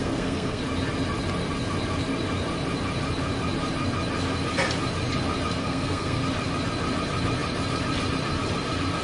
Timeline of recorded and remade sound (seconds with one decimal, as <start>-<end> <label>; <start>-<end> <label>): 0.0-0.6 remade; 0.6-5.6 recorded; 5.6-6.2 remade; 6.2-9.0 recorded